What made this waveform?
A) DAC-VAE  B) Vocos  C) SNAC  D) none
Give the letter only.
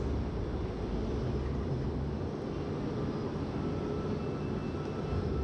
D